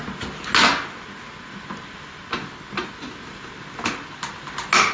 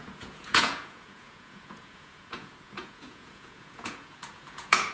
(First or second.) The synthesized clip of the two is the second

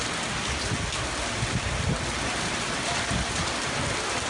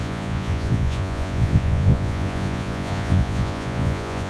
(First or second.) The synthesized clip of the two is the second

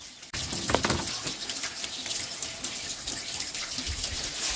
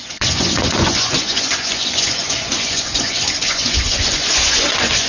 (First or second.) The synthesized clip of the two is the second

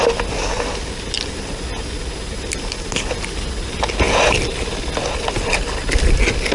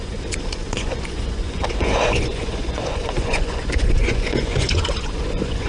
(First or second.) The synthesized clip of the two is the second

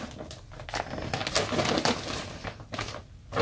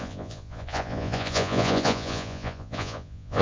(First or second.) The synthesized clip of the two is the second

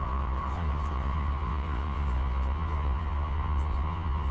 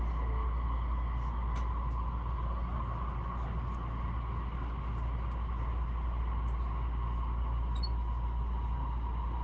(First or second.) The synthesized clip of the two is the first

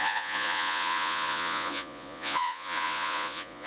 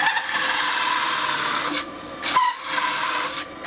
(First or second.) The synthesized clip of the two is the first